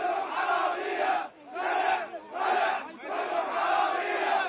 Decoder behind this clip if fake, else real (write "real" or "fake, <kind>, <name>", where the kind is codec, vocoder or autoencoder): real